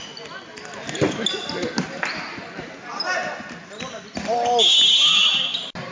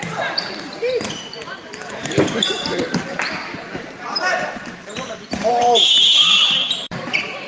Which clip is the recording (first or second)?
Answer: first